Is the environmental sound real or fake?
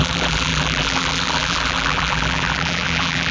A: fake